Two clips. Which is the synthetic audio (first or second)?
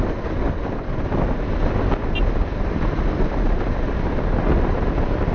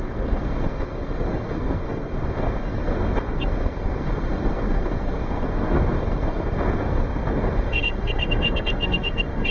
second